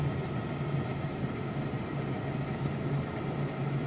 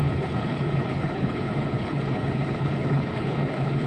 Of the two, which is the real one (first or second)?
first